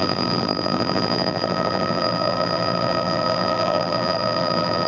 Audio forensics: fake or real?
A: fake